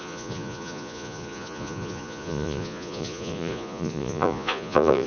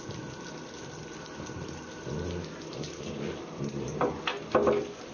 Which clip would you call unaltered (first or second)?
second